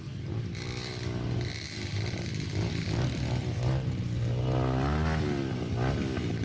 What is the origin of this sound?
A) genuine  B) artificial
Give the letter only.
A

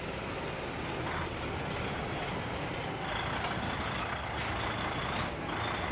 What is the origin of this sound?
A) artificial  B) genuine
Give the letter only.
B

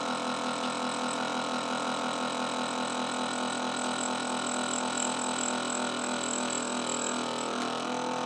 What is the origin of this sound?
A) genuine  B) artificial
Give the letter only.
A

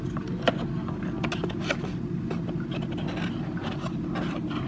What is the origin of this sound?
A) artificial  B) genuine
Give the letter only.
B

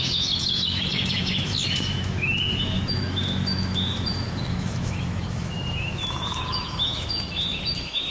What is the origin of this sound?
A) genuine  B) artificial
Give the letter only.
B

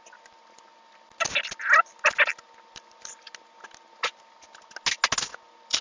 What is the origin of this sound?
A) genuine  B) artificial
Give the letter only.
A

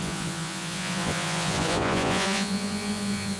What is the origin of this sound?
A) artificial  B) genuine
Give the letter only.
A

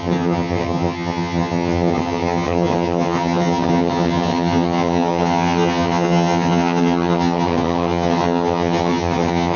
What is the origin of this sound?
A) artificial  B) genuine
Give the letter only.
A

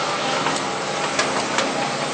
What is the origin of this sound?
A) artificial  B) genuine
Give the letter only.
B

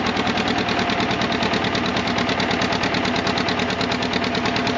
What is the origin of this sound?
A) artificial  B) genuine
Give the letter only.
B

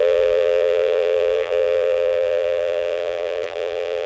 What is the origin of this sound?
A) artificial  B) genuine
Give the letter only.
A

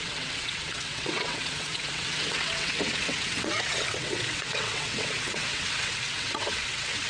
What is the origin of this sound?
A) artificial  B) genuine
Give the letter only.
A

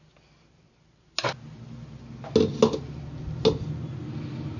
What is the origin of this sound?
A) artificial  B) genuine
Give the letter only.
B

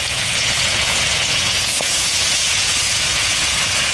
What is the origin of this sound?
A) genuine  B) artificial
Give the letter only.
B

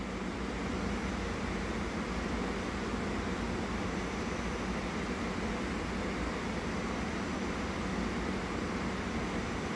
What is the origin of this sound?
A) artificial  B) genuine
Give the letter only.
B